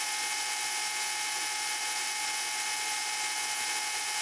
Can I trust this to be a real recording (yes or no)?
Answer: yes